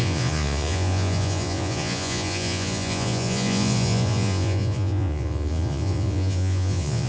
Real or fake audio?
fake